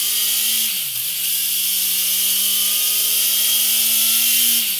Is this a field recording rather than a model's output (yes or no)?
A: yes